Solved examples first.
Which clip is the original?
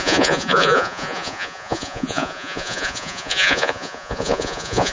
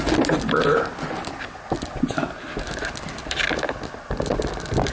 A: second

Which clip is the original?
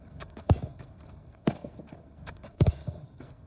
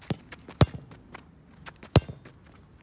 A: second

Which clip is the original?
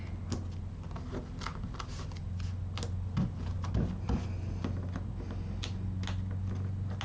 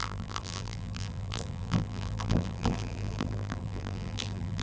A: first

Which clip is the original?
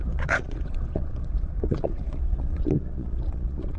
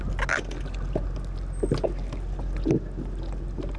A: second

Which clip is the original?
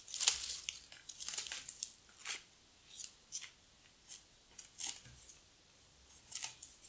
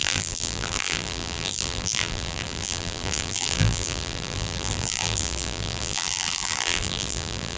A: first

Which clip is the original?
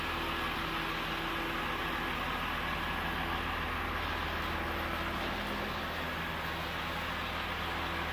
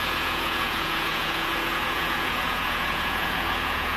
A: first